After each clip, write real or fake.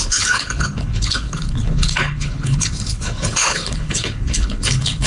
fake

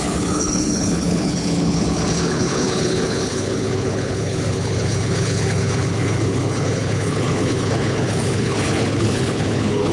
fake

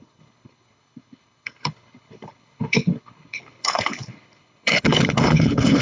fake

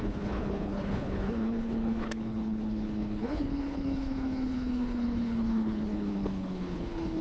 fake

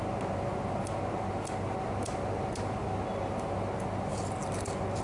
real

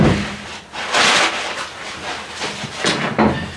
real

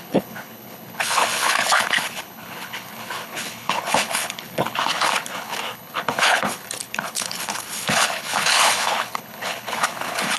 fake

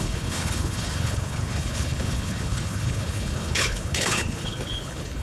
fake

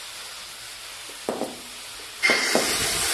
real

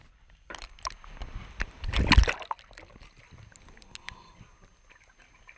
real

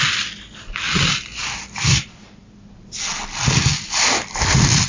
real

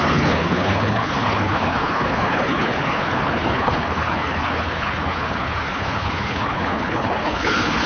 fake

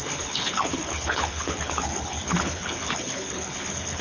fake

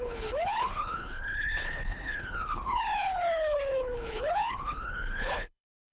fake